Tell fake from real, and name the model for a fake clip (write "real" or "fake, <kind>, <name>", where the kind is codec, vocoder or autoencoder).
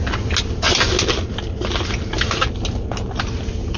real